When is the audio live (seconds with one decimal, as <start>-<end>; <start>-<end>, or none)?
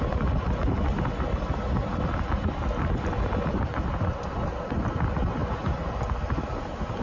0.0-7.0